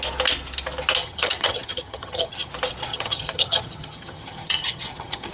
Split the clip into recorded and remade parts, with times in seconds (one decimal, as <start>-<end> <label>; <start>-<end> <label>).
0.0-1.0 recorded; 1.0-2.5 remade; 2.5-2.9 recorded; 2.9-5.3 remade